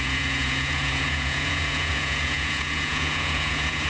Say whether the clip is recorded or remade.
remade